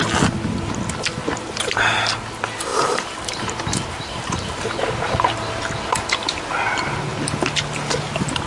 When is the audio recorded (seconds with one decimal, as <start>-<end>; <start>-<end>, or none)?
0.0-1.2; 1.8-2.7; 5.5-8.5